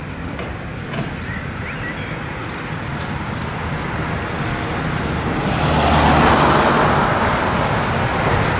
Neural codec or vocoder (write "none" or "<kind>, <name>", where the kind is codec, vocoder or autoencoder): none